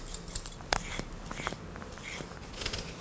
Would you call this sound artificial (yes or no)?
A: no